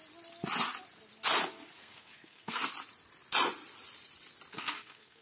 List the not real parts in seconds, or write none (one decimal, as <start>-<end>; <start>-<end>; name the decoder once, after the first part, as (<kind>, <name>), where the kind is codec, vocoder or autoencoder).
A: 1.8-2.7 (codec, SNAC); 4.5-5.2